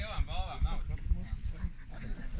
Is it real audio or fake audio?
real